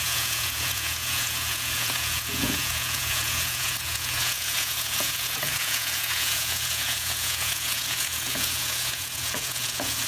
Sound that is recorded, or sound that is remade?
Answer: remade